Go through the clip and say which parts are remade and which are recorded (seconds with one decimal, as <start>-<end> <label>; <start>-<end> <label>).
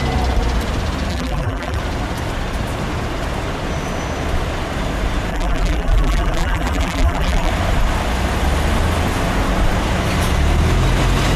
0.0-1.1 recorded; 1.1-1.8 remade; 1.8-5.3 recorded; 5.3-7.5 remade; 7.5-11.4 recorded